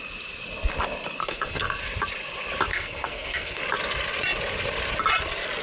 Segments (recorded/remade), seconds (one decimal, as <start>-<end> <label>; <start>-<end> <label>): 0.0-1.2 recorded; 1.2-1.8 remade; 1.8-2.7 recorded; 2.7-3.6 remade; 3.6-5.6 recorded